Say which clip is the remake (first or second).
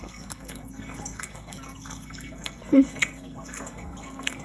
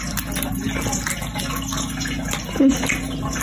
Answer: first